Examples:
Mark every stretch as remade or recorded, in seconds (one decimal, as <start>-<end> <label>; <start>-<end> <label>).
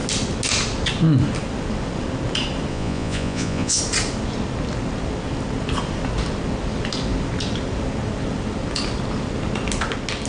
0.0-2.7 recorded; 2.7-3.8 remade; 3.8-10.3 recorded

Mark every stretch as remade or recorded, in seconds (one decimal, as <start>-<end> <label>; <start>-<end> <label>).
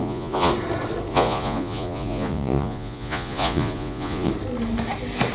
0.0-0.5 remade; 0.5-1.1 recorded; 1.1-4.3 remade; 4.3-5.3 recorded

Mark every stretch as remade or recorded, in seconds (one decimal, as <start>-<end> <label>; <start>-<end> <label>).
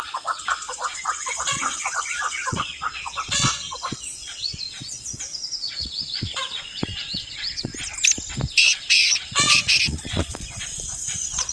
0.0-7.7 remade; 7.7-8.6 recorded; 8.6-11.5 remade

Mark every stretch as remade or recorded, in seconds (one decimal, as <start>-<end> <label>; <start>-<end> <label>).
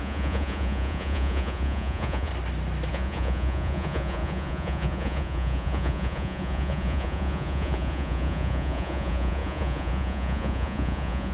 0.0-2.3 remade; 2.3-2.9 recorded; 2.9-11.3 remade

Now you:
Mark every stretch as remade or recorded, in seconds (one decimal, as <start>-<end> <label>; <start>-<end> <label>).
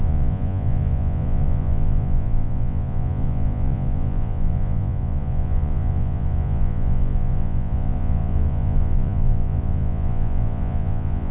0.0-11.3 remade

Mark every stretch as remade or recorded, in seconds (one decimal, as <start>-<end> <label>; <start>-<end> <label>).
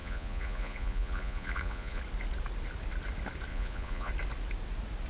0.0-2.0 remade; 2.0-3.5 recorded; 3.5-4.1 remade; 4.1-5.1 recorded